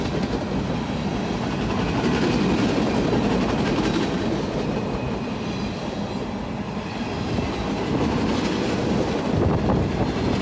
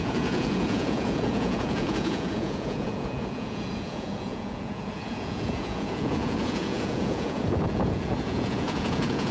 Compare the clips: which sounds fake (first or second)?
second